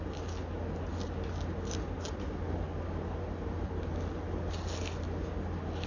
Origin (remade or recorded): recorded